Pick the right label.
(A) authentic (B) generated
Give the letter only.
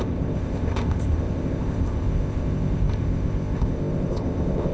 B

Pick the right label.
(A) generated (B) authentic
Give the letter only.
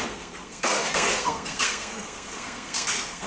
A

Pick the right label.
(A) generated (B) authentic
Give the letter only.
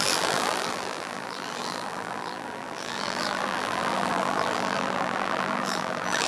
A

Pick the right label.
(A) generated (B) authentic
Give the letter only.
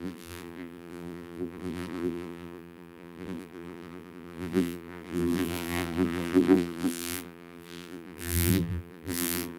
A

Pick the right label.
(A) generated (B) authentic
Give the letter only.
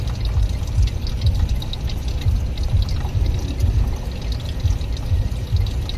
B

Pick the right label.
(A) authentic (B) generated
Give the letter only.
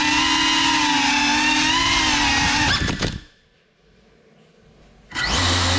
A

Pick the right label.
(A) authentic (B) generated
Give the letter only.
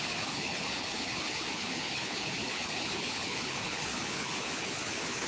B